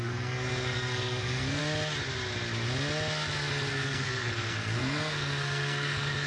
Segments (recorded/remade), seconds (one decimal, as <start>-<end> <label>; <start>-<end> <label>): 0.0-1.6 remade; 1.6-3.7 recorded; 3.7-6.3 remade